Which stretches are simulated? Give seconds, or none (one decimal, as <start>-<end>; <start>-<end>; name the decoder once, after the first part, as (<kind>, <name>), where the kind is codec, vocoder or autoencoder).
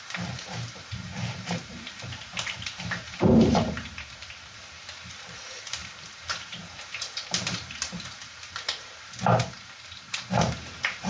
0.0-11.1 (vocoder, BigVGAN v2)